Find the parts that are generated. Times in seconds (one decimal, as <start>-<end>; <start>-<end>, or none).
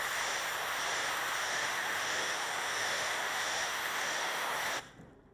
1.4-4.5